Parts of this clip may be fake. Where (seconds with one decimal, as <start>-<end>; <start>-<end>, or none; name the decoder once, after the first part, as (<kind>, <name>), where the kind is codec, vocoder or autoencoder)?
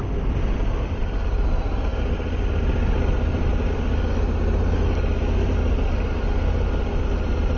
none